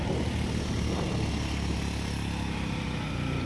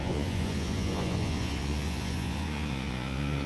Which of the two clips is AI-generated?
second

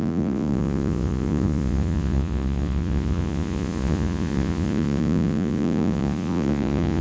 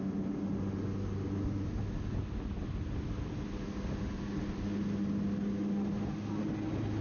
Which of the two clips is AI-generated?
first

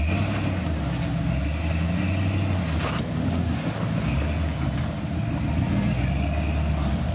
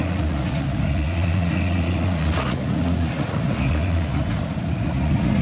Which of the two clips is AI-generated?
second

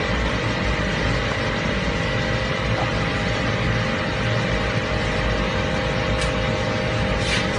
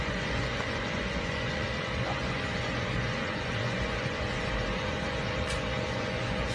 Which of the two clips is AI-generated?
second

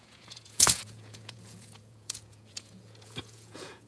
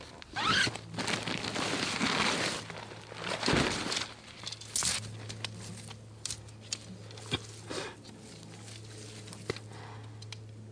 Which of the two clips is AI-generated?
first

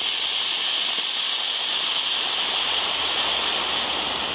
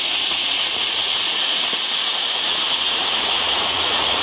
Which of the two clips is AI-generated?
second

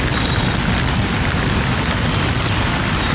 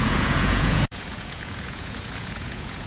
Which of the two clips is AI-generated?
second